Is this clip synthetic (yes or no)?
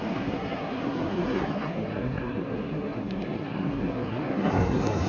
yes